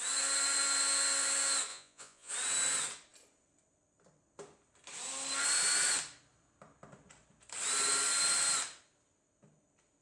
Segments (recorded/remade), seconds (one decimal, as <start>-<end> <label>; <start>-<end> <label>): 0.0-1.7 recorded; 1.7-2.3 remade; 2.3-10.0 recorded